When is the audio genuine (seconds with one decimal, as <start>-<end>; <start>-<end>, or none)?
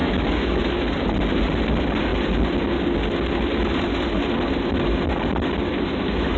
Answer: 0.6-6.4